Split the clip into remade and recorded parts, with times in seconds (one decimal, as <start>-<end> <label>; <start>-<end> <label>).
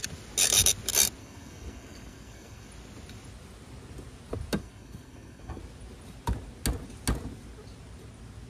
0.0-1.2 recorded; 1.2-2.7 remade; 2.7-4.6 recorded; 4.6-5.6 remade; 5.6-8.5 recorded